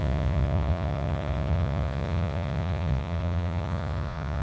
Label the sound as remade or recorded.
remade